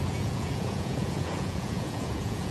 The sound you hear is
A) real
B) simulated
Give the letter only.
B